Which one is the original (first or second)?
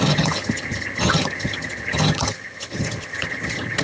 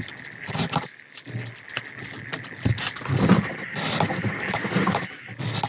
second